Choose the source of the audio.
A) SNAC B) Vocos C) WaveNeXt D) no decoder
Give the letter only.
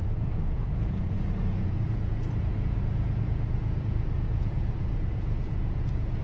B